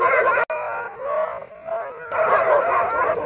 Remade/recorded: recorded